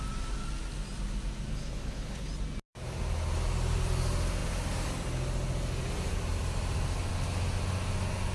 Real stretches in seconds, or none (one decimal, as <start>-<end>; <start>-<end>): 0.0-1.5; 2.3-8.3